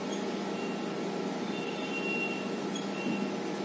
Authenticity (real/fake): real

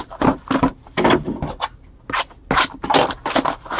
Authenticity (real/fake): real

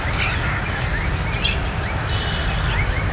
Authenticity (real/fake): real